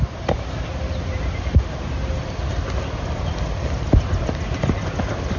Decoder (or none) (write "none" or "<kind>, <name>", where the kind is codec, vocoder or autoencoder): none